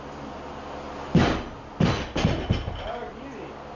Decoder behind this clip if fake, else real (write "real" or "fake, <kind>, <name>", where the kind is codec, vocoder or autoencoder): real